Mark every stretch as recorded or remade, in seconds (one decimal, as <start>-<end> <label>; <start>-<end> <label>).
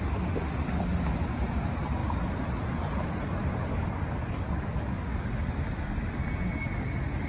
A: 0.0-3.7 recorded; 3.7-5.6 remade; 5.6-7.3 recorded